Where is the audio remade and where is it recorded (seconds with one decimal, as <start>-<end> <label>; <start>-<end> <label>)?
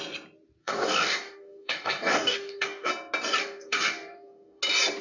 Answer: 0.0-0.6 recorded; 0.6-2.9 remade; 2.9-3.4 recorded; 3.4-4.6 remade; 4.6-5.0 recorded